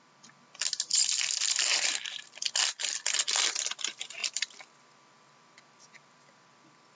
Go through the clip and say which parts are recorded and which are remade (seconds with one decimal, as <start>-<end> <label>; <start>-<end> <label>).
0.0-7.0 recorded